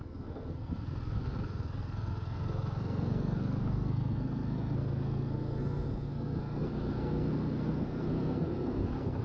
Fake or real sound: fake